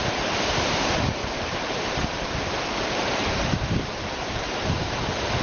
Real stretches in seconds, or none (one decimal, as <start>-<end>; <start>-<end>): 0.7-1.2; 3.9-5.4